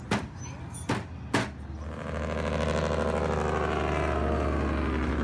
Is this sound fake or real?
real